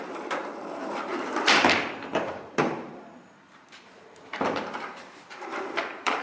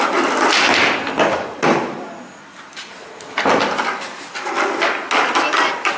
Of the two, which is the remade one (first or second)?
first